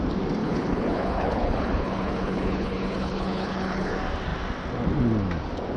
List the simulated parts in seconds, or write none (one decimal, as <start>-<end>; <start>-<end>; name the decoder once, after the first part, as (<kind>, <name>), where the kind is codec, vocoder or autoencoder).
0.4-3.9 (codec, HILCodec)